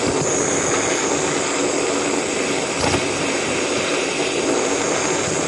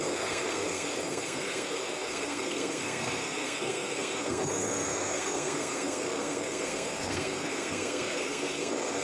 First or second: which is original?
first